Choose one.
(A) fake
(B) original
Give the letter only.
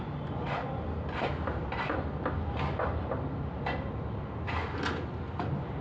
B